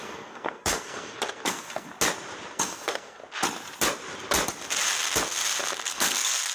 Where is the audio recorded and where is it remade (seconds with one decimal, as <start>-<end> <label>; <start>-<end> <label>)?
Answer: 0.0-1.9 remade; 1.9-2.5 recorded; 2.5-3.2 remade; 3.2-5.8 recorded; 5.8-6.5 remade